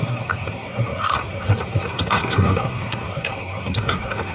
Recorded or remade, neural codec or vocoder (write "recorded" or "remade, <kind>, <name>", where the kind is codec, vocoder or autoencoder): remade, codec, SNAC